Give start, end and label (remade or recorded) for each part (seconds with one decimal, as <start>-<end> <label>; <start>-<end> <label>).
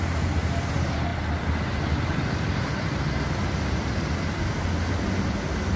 0.0-5.8 recorded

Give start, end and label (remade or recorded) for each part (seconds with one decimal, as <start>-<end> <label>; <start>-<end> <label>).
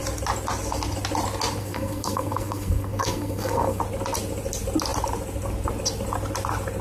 0.0-1.6 recorded; 1.6-3.8 remade; 3.8-6.8 recorded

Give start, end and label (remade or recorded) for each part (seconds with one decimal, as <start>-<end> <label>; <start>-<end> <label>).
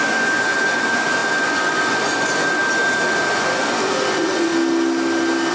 0.0-2.6 remade; 2.6-3.3 recorded; 3.3-4.5 remade; 4.5-5.5 recorded